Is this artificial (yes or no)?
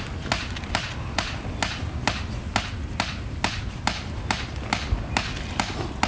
no